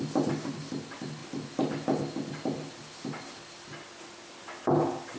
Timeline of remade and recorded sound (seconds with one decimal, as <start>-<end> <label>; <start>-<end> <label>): 0.0-5.2 recorded